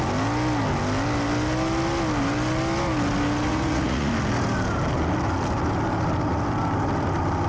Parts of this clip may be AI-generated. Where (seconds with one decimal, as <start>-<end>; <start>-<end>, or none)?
3.5-4.1